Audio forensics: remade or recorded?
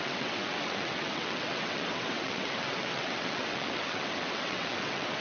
remade